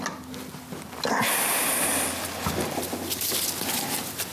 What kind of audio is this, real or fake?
real